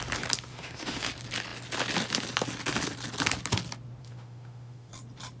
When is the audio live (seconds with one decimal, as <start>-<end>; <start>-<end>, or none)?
0.0-0.5; 1.1-4.0; 4.9-5.4